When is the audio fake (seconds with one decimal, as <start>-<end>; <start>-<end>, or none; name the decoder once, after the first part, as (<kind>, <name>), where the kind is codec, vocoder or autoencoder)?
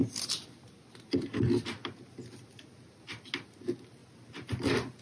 none